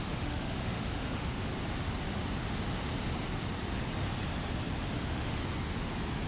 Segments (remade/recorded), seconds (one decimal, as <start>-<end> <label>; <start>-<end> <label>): 0.0-1.5 remade; 1.5-4.9 recorded; 4.9-5.4 remade; 5.4-6.3 recorded